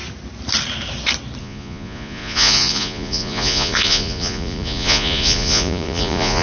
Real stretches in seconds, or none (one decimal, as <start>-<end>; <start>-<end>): 0.0-1.4